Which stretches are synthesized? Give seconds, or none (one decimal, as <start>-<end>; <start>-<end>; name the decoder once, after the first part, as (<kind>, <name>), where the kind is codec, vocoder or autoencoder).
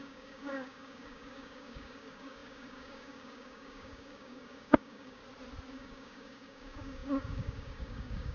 0.0-5.2 (codec, DAC); 5.7-8.3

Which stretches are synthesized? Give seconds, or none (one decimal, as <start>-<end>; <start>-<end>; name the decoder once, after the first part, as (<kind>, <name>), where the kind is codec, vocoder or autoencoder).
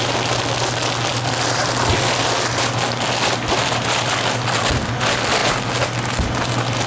none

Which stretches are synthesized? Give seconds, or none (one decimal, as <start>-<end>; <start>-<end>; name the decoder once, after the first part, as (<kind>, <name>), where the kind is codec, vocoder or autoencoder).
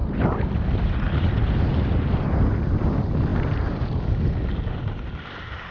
none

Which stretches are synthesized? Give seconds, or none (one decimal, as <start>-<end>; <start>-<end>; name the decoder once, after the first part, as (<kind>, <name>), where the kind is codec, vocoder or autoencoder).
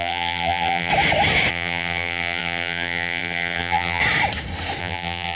0.0-0.9 (vocoder, BigVGAN v2); 1.5-4.0; 4.8-5.3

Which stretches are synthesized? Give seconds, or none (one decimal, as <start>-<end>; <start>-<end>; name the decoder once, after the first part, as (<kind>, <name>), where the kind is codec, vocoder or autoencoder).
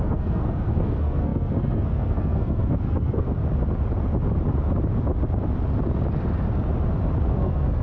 0.0-3.4 (codec, SNAC); 7.3-7.8